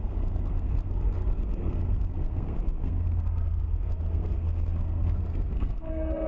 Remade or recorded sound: remade